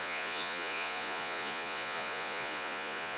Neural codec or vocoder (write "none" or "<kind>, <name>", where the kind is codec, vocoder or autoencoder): vocoder, Vocos